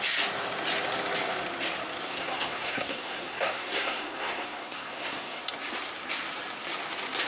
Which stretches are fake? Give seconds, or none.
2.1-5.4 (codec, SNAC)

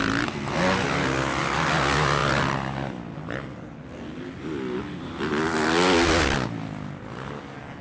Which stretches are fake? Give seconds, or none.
none

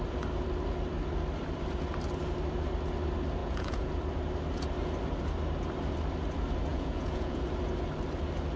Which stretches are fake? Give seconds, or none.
3.4-3.9 (vocoder, Vocos); 6.7-7.4

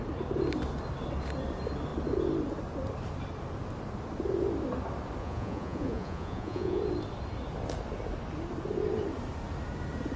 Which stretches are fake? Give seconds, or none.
5.2-6.8 (vocoder, Vocos)